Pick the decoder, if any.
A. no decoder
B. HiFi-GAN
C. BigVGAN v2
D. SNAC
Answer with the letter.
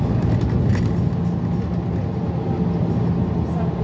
A